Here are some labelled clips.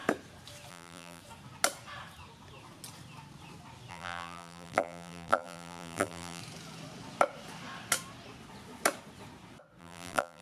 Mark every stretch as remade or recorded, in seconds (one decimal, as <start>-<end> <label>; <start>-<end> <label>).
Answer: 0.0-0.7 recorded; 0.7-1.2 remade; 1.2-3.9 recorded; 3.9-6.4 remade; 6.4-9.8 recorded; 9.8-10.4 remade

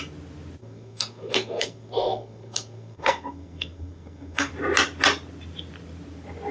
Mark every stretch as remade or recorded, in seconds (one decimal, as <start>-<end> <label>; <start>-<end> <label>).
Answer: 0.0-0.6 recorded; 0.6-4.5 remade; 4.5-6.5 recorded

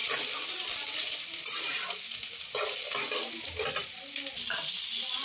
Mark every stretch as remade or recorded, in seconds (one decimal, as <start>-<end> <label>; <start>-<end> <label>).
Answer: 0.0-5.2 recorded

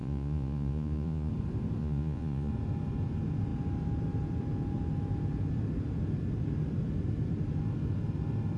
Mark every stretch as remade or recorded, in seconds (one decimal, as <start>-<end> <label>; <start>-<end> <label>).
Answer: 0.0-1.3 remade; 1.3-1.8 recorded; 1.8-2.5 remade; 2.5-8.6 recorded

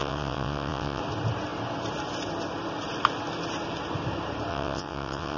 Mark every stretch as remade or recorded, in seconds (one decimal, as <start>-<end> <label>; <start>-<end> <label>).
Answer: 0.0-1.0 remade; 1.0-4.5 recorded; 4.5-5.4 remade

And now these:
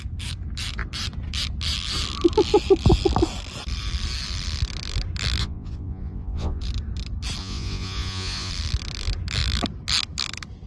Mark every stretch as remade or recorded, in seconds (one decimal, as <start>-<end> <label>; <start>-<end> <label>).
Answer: 0.0-5.4 recorded; 5.4-6.6 remade; 6.6-7.4 recorded; 7.4-8.5 remade; 8.5-10.7 recorded

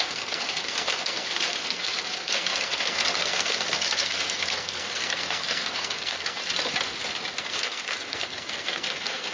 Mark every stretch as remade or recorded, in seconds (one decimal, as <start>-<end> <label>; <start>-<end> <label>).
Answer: 0.0-6.4 remade; 6.4-7.4 recorded; 7.4-9.3 remade